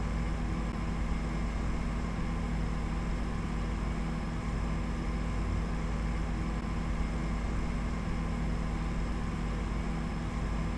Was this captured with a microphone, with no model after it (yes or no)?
yes